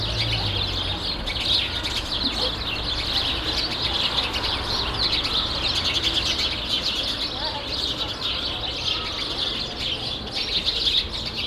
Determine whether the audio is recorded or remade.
recorded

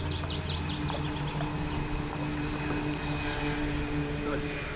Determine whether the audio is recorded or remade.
recorded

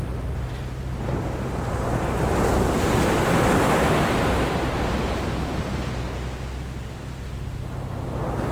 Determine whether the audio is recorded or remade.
recorded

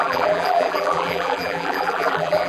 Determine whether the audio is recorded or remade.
remade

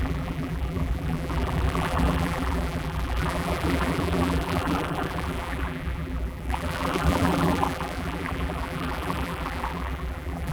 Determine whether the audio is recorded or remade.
remade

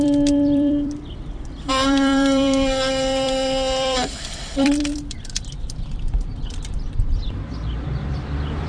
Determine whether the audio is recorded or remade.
remade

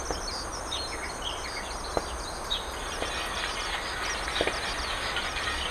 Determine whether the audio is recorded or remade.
recorded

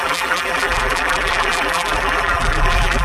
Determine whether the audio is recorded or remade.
remade